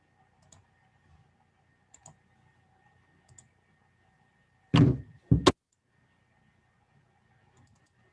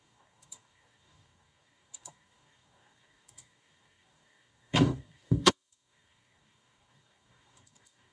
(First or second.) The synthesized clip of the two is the second